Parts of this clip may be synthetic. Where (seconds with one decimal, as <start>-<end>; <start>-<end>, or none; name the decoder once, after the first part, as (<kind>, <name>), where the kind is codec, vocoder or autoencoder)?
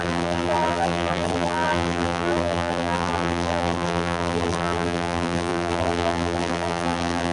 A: 0.0-7.3 (vocoder, BigVGAN v2)